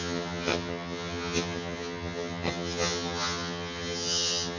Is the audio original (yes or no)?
no